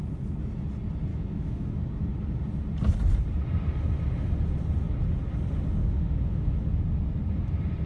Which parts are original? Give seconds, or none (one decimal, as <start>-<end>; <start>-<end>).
0.0-1.1; 1.8-5.8; 6.8-7.9